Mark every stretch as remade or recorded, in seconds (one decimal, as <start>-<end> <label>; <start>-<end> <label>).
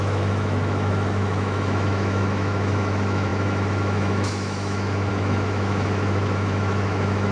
0.0-7.3 remade